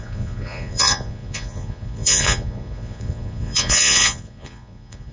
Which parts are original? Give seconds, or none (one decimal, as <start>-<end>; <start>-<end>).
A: none